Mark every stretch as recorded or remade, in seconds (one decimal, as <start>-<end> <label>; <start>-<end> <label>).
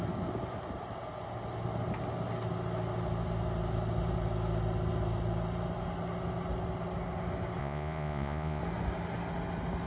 0.0-7.6 recorded; 7.6-8.6 remade; 8.6-9.9 recorded